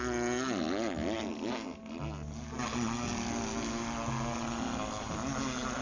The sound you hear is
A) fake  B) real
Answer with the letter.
B